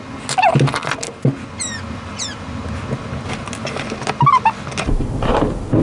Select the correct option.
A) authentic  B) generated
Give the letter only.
A